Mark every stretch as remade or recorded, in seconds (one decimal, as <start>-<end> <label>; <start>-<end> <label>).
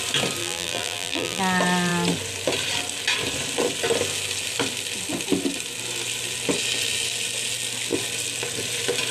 0.0-0.4 recorded; 0.4-1.4 remade; 1.4-9.1 recorded